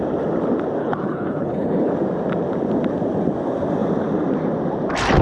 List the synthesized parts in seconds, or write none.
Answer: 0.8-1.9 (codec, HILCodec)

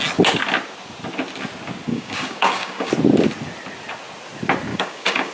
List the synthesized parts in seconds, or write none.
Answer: 1.9-2.9 (codec, DAC); 4.7-5.3

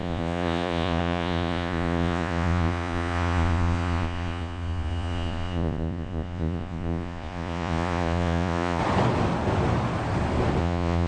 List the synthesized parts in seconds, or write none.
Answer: 0.0-8.8 (vocoder, Vocos); 10.6-11.1

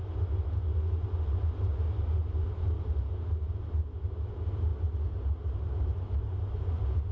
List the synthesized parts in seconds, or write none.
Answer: none

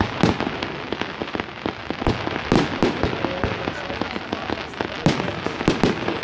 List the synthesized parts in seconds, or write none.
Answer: none